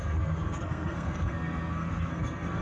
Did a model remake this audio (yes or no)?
yes